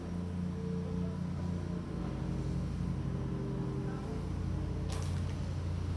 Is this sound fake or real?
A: real